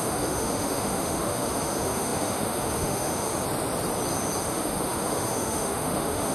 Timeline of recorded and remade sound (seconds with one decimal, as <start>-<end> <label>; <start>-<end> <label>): 0.0-3.3 remade; 3.3-4.4 recorded; 4.4-6.3 remade